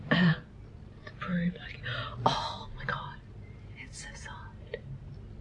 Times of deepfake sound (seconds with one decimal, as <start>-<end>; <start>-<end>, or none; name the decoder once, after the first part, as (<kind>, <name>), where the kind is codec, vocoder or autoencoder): none